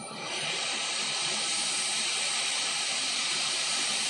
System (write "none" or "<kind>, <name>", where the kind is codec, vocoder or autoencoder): vocoder, BigVGAN v2